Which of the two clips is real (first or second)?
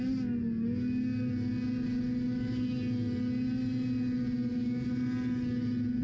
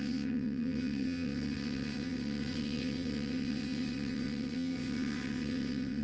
first